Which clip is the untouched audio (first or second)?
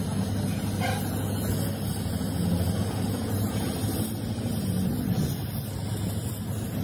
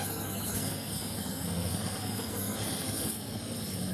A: first